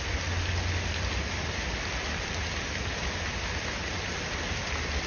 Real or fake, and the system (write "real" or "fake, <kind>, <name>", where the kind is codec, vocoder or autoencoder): real